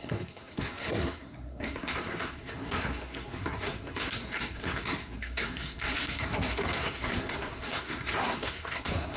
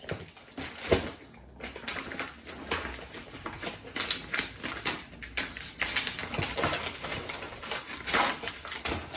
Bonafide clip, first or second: second